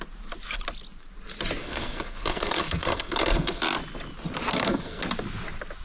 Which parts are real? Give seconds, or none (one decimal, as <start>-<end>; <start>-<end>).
0.0-1.6; 3.6-4.5; 5.0-5.8